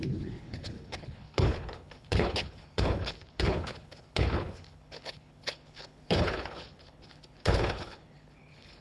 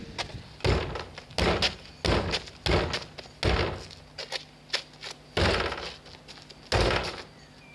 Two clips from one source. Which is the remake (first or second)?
first